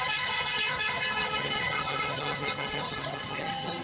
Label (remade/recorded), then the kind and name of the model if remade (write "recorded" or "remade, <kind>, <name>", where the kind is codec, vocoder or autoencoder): remade, vocoder, HiFi-GAN